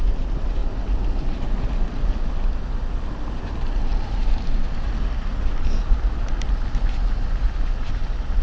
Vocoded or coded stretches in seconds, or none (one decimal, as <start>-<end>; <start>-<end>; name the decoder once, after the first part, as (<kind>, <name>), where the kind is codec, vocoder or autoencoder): none